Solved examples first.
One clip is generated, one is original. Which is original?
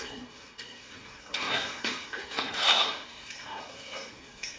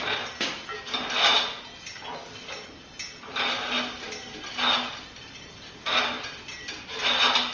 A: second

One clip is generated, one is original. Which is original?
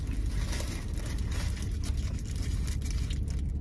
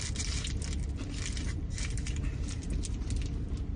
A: first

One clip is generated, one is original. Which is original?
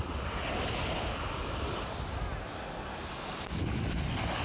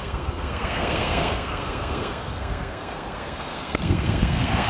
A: first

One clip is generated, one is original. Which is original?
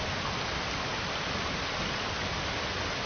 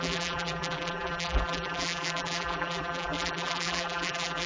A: first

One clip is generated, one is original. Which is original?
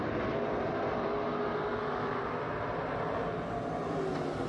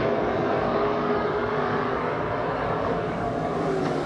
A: first